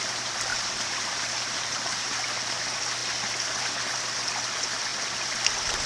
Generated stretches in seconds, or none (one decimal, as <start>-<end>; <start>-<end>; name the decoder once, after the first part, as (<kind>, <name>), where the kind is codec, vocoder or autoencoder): 0.5-2.3 (vocoder, BigVGAN v2)